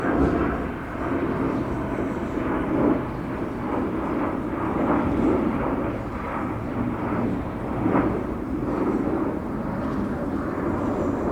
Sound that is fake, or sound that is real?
real